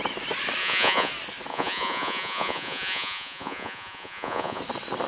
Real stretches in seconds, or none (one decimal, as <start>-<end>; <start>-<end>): 0.0-0.6; 1.1-1.5; 4.6-5.1